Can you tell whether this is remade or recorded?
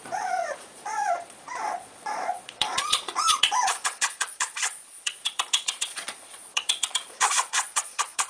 remade